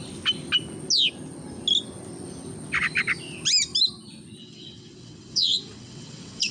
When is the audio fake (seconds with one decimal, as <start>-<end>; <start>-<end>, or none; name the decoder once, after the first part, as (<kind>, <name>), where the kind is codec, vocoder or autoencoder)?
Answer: 4.4-6.5 (vocoder, WaveNeXt)